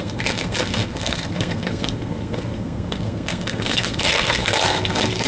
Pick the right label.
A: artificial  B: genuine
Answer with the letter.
A